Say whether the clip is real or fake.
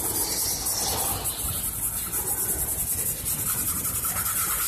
real